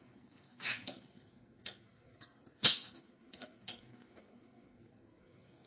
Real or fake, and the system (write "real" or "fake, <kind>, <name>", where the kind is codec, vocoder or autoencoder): fake, codec, SNAC